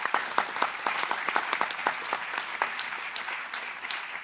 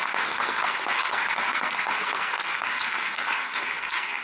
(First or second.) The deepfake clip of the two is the second